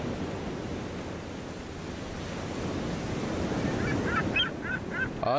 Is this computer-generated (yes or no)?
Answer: no